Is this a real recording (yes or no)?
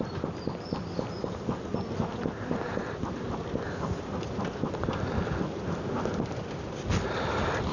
yes